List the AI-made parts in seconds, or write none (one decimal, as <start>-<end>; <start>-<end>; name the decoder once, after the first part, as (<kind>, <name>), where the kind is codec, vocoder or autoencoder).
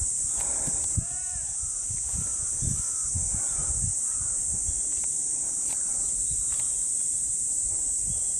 0.0-2.3 (vocoder, BigVGAN v2); 3.5-4.5; 5.0-5.7; 6.4-8.4